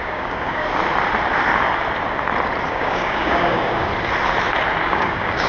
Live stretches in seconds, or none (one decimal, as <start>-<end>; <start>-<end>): 0.8-2.7; 3.9-4.8